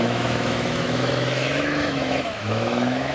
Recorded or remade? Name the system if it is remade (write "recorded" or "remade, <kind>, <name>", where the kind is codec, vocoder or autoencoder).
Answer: remade, autoencoder, DAC-VAE